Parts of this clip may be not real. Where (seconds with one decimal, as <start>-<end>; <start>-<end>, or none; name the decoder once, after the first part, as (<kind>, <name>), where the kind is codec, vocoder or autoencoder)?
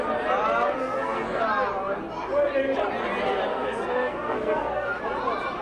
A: 0.8-1.4 (codec, SNAC); 3.5-5.0